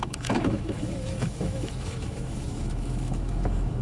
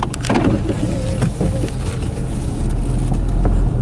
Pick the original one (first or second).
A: second